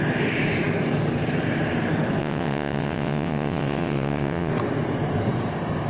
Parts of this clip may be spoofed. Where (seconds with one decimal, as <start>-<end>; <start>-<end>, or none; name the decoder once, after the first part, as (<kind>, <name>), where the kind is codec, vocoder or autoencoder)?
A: 2.2-4.5 (vocoder, WaveNeXt)